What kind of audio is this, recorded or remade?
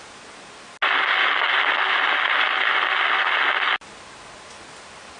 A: recorded